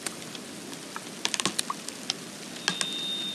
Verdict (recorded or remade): recorded